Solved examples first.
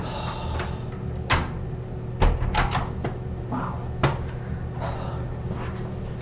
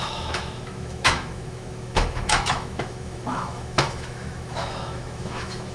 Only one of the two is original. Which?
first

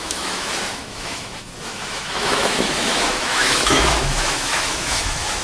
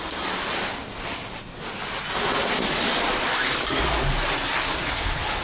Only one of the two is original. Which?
second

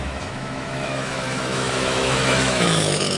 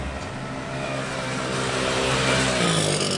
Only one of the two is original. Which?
second